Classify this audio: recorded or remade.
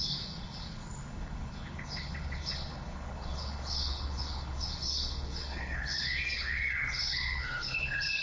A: remade